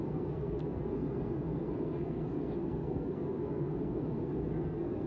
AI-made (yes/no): yes